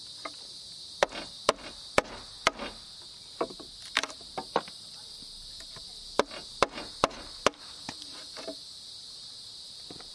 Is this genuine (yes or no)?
yes